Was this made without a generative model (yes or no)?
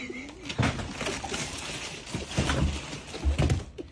yes